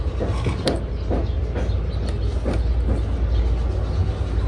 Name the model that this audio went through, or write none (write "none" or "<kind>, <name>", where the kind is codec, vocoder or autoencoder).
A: none